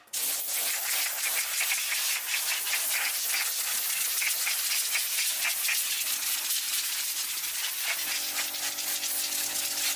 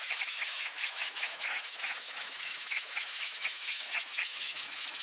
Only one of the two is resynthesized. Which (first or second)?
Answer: second